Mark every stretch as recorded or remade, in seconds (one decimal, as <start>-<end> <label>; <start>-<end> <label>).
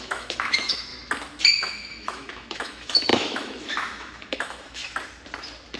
0.0-0.9 remade; 0.9-1.5 recorded; 1.5-4.8 remade; 4.8-5.8 recorded